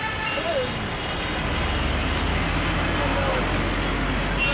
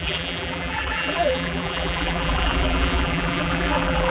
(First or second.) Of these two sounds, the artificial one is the second